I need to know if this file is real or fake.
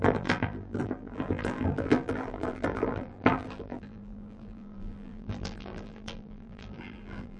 fake